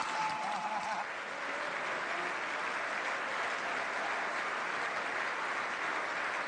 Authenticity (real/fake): real